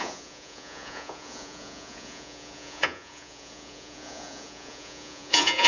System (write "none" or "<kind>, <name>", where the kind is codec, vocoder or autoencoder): vocoder, Vocos